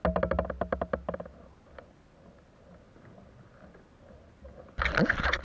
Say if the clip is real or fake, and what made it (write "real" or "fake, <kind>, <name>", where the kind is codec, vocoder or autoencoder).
real